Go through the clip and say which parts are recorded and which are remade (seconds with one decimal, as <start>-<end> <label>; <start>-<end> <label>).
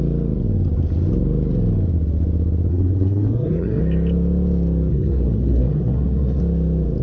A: 0.0-2.7 recorded; 2.7-3.8 remade; 3.8-4.9 recorded; 4.9-6.4 remade; 6.4-7.0 recorded